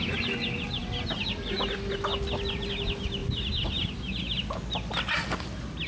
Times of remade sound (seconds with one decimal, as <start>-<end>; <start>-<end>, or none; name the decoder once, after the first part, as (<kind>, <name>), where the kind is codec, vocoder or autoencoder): none